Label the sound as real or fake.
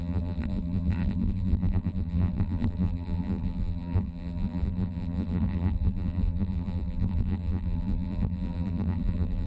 fake